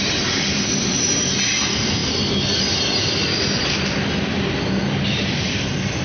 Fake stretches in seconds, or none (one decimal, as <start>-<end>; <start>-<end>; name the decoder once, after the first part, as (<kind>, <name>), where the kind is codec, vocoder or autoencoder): 0.0-2.0 (vocoder, BigVGAN v2); 5.0-6.0